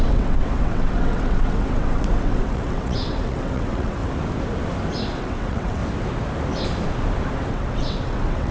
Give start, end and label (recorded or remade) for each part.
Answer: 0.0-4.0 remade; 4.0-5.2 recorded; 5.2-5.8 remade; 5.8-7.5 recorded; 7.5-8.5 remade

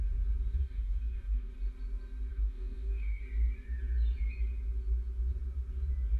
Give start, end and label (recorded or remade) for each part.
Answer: 0.0-0.5 recorded; 0.5-1.5 remade; 1.5-2.3 recorded; 2.3-3.2 remade; 3.2-6.2 recorded

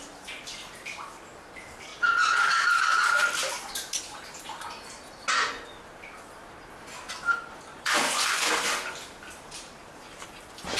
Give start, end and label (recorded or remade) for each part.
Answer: 0.0-7.7 recorded; 7.7-8.6 remade; 8.6-10.8 recorded